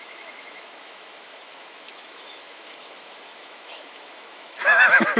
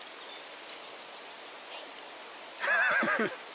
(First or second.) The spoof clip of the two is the first